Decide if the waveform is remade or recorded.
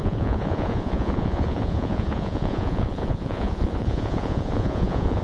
remade